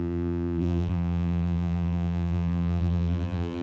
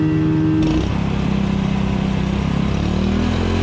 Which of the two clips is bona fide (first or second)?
second